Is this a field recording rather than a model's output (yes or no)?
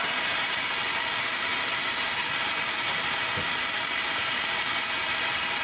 yes